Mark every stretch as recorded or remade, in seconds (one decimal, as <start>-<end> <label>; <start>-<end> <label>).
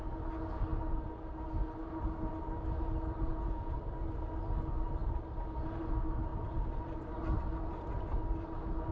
0.0-3.3 recorded; 3.3-3.8 remade; 3.8-8.9 recorded